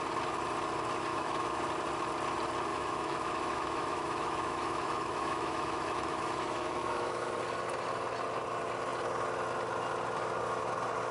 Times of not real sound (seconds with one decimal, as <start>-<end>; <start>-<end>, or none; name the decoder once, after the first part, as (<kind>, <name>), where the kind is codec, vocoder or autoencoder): 1.1-1.6 (autoencoder, DAC-VAE); 2.7-7.3